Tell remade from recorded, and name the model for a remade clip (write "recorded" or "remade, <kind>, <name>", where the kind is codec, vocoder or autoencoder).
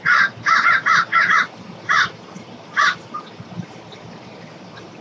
recorded